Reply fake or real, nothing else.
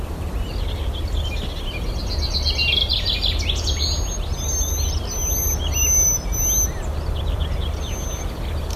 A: real